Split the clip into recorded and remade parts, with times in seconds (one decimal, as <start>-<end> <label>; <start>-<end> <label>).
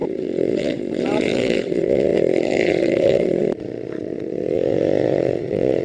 0.0-5.8 remade